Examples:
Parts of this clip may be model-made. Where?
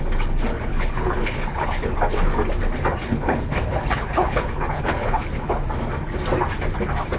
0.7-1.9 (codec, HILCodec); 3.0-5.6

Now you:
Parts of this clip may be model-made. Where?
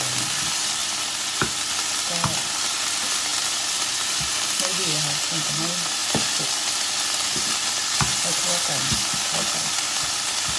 none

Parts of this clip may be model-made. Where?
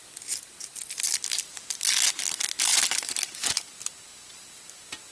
none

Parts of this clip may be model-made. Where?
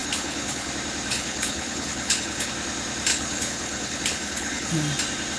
0.0-0.7 (codec, HILCodec); 1.1-2.5; 3.1-4.7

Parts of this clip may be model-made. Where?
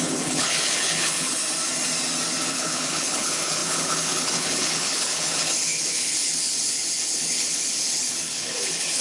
0.0-1.4 (codec, HILCodec); 2.5-9.0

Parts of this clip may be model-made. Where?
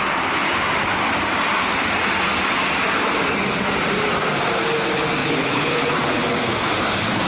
5.2-5.9 (codec, HILCodec)